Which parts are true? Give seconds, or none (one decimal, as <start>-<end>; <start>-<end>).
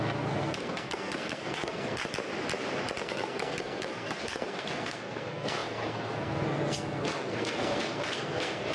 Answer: 2.0-3.0